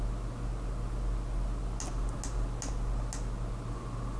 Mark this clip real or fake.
real